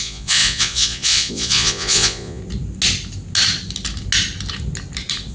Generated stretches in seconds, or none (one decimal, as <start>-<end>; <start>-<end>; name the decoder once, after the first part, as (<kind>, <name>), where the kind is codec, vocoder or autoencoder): 0.0-2.4 (vocoder, Vocos)